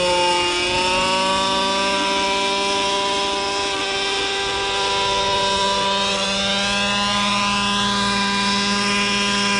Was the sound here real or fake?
real